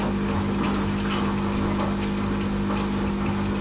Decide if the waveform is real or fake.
real